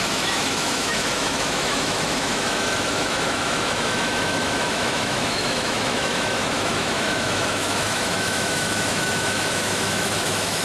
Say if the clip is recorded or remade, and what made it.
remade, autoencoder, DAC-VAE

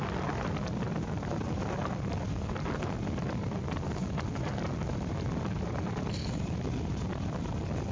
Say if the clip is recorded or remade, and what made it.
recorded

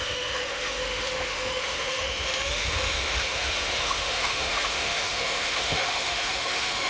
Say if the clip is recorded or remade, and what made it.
remade, autoencoder, DAC-VAE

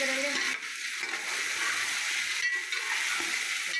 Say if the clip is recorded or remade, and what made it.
recorded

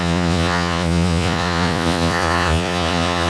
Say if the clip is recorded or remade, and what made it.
remade, vocoder, Vocos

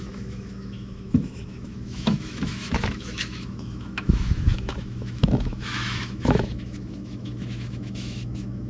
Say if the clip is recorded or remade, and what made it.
remade, autoencoder, DAC-VAE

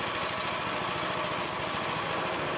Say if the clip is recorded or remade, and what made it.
recorded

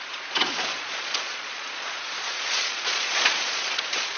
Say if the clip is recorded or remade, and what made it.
remade, vocoder, Vocos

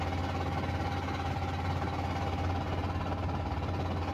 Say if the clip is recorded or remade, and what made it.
recorded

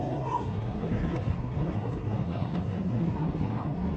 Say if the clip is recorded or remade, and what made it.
remade, codec, SNAC